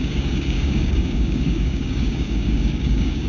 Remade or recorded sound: remade